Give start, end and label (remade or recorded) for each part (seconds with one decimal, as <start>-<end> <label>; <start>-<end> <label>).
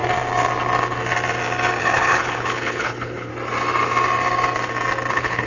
0.0-1.8 recorded; 1.8-3.3 remade; 3.3-5.1 recorded; 5.1-5.5 remade